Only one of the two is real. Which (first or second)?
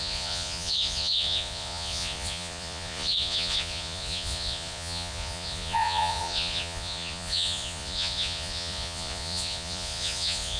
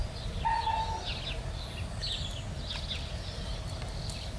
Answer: second